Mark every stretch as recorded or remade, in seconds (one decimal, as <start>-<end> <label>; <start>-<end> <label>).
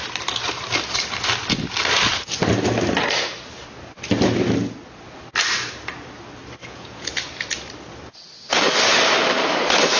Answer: 0.0-6.6 recorded; 6.6-7.2 remade; 7.2-10.0 recorded